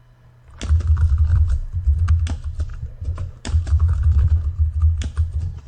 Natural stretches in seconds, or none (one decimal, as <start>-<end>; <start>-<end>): 0.0-1.3; 2.1-2.7